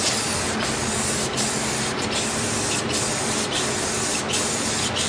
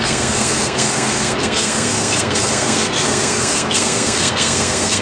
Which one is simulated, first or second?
second